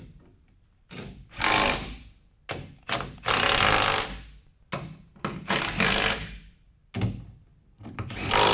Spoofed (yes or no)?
no